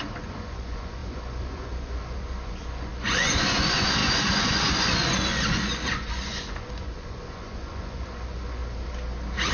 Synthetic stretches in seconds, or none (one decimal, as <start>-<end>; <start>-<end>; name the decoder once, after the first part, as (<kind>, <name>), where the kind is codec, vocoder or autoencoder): 0.0-8.6 (vocoder, Vocos)